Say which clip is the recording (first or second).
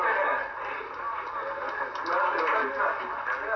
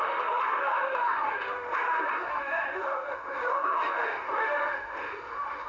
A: first